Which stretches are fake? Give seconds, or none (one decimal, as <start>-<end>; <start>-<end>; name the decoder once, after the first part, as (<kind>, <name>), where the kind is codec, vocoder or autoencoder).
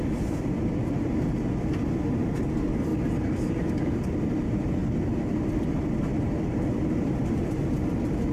0.0-4.8 (vocoder, BigVGAN v2); 5.5-8.3